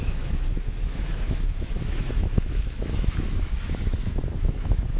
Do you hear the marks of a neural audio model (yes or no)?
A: yes